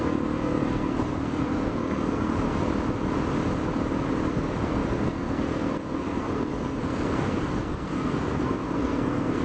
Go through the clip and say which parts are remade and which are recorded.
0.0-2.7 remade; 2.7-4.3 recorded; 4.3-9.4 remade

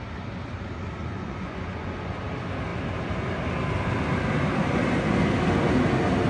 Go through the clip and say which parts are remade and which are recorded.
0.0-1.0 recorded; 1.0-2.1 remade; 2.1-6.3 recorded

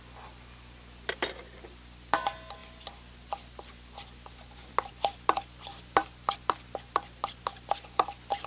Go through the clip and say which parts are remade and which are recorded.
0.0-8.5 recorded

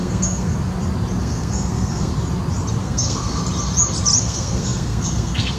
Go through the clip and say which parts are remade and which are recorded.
0.0-0.5 remade; 0.5-1.2 recorded; 1.2-2.1 remade; 2.1-2.8 recorded; 2.8-3.4 remade; 3.4-4.2 recorded; 4.2-5.6 remade

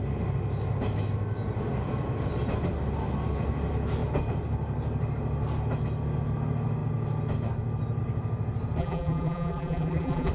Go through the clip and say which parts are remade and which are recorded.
0.0-8.8 recorded; 8.8-10.3 remade

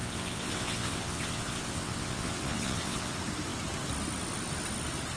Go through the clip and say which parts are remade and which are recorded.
0.0-3.1 remade; 3.1-5.2 recorded